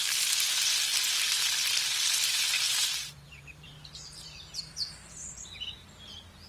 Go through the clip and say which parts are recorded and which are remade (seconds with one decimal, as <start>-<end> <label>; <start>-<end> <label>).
0.0-2.8 recorded; 2.8-4.5 remade; 4.5-6.5 recorded